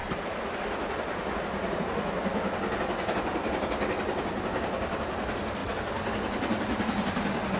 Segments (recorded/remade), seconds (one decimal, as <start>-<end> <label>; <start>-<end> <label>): 0.0-1.8 remade; 1.8-7.6 recorded